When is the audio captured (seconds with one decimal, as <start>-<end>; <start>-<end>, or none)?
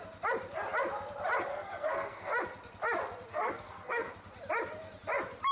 0.0-1.5; 2.3-3.3; 4.1-5.5